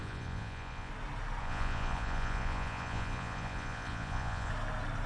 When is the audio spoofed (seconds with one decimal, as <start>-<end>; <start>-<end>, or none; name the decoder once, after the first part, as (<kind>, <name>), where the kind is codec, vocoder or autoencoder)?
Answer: 0.0-0.9 (vocoder, Vocos); 1.4-4.5